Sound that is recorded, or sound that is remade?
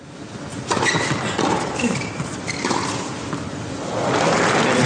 recorded